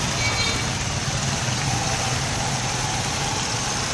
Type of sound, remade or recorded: recorded